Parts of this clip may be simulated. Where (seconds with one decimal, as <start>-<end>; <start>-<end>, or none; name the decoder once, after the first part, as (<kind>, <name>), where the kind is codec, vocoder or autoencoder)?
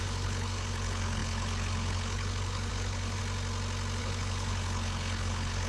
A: 0.0-3.2 (codec, HILCodec); 4.0-5.7